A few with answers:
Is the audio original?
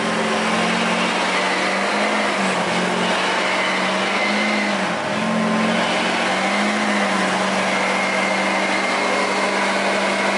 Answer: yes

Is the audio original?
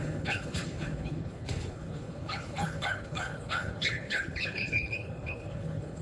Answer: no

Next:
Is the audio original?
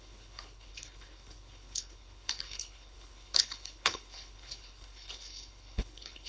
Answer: no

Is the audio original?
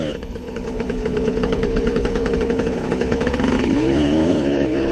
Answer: no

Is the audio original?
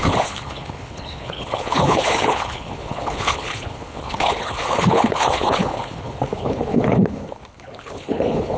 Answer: no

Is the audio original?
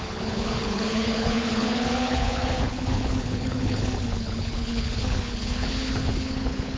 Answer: no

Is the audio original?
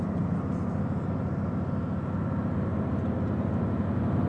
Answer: yes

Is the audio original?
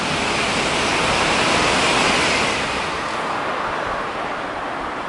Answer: yes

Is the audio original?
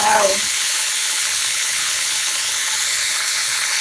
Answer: no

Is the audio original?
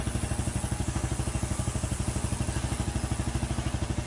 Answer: yes